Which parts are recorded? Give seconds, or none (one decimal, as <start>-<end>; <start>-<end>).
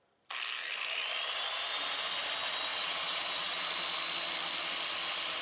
0.0-2.7; 3.6-5.4